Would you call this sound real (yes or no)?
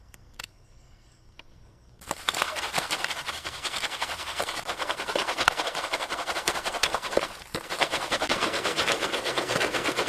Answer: no